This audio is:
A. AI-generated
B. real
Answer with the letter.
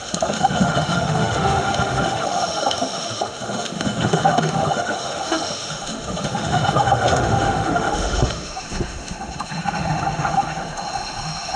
A